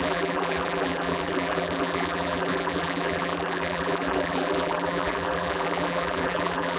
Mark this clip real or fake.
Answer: fake